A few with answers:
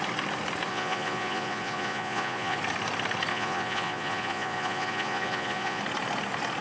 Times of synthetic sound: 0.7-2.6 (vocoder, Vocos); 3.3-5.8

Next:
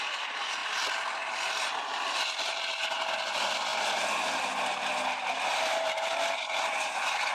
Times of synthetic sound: none